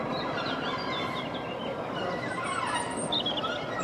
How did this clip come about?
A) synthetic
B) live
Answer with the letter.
A